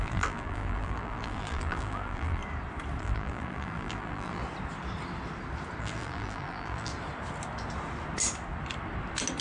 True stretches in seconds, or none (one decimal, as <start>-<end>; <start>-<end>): 2.4-3.0; 4.4-5.8; 6.9-9.4